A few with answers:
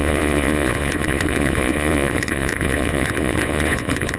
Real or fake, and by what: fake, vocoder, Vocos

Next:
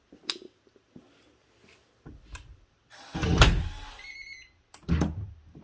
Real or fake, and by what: real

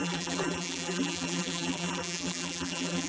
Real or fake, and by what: fake, vocoder, BigVGAN v2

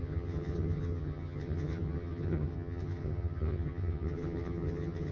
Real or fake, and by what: fake, vocoder, HiFi-GAN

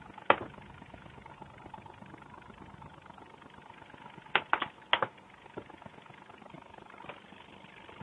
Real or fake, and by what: real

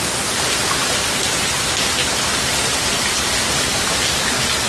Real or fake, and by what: real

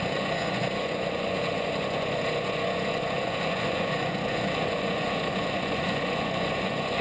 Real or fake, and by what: fake, vocoder, Vocos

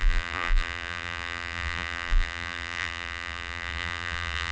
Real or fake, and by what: fake, vocoder, BigVGAN v2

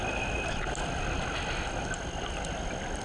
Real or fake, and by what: real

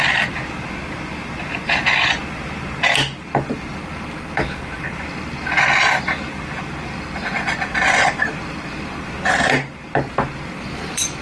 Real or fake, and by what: real